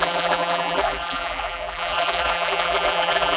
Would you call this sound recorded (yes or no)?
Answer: no